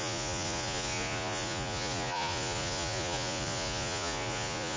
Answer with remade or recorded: remade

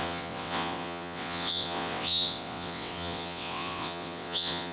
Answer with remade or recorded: remade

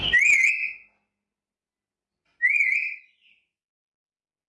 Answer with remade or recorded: recorded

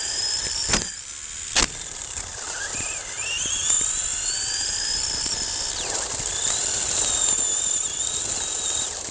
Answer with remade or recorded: recorded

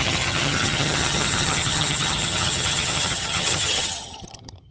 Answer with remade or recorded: remade